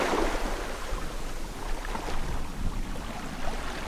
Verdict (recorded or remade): recorded